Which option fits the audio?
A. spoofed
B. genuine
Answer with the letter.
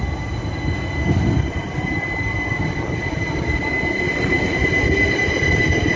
B